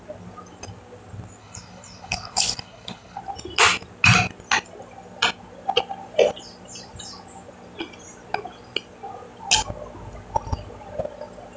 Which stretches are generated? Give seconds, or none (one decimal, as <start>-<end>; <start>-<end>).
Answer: 1.4-3.2